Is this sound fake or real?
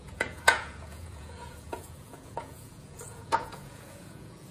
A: fake